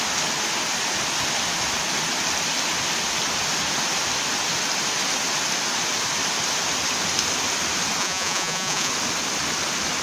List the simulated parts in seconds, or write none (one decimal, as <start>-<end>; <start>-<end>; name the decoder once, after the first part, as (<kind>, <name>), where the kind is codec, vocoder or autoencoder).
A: 8.0-8.9 (vocoder, Vocos)